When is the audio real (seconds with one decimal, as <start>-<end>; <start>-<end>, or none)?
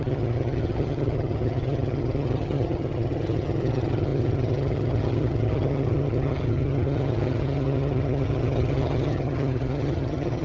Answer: none